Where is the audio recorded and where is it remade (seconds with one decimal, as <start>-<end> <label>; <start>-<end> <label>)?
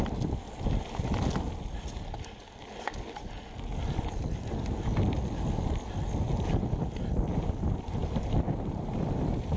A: 0.0-9.6 recorded